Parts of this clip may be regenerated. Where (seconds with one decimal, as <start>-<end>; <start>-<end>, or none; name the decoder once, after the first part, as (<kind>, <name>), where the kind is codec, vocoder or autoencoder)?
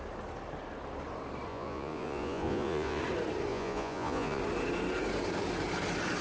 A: 1.5-3.0 (vocoder, Vocos); 3.5-4.4